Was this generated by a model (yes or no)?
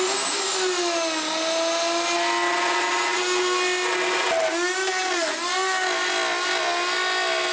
no